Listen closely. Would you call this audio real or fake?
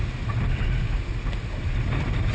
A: real